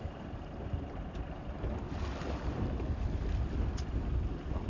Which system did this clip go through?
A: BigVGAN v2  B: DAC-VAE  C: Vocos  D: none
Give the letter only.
D